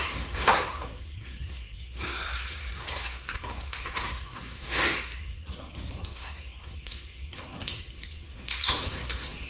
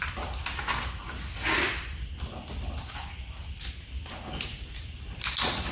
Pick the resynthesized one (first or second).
first